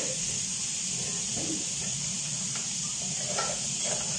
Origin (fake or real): real